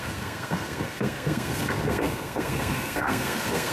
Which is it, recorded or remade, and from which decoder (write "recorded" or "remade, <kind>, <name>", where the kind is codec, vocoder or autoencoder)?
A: remade, codec, SNAC